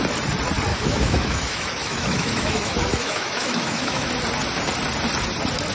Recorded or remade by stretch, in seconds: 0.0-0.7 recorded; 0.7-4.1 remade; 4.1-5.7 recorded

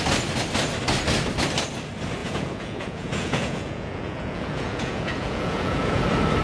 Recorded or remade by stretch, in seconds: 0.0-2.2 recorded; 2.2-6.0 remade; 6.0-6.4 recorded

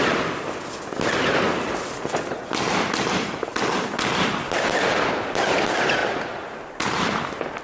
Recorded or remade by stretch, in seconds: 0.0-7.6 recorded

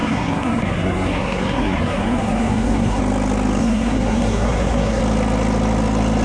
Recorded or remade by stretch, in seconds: 0.0-3.0 remade; 3.0-3.6 recorded; 3.6-5.0 remade; 5.0-6.2 recorded